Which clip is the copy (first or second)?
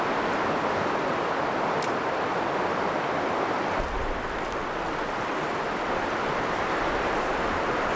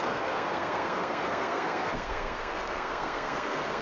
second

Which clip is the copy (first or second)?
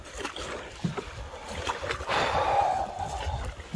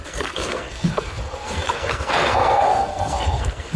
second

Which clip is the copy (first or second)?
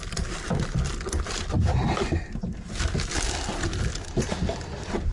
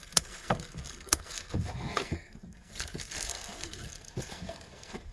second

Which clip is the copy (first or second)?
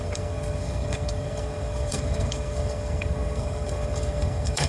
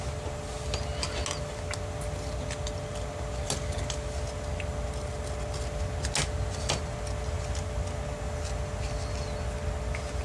first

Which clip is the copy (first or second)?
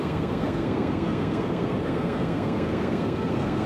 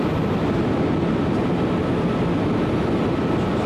first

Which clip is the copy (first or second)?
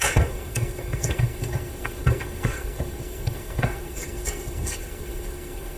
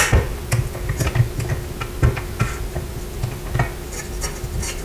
first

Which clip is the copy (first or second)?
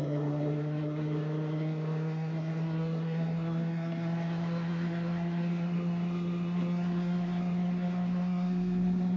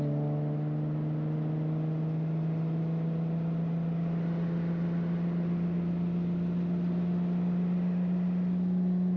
first